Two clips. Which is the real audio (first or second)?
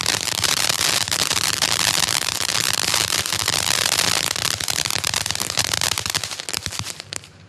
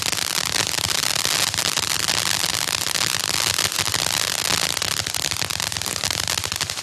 second